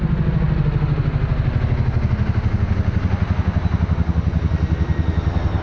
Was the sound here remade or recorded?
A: recorded